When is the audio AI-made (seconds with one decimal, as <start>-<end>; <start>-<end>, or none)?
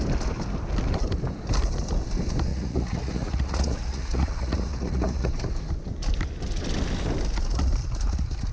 2.5-5.3